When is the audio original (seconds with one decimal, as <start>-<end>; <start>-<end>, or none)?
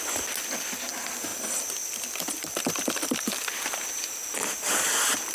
0.0-5.3